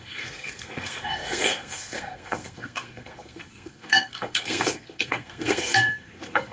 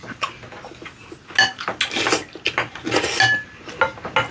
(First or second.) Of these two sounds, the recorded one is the second